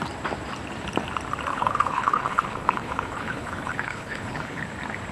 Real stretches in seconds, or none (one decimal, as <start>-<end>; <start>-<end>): 0.0-1.5; 4.6-5.1